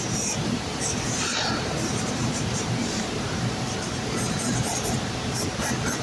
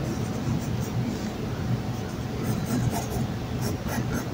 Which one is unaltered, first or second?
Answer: second